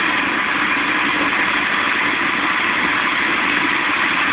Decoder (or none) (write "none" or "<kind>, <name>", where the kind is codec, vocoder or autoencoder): none